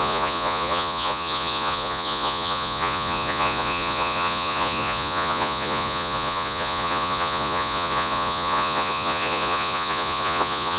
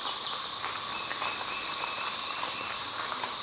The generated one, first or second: first